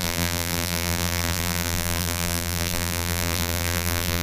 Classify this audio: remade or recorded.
remade